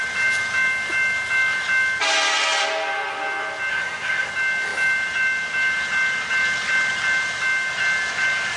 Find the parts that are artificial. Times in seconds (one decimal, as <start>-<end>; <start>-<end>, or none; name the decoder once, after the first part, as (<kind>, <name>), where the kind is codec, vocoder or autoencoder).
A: 3.7-4.3 (codec, SNAC)